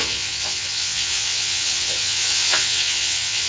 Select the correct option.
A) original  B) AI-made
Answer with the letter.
B